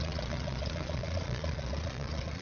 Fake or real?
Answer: fake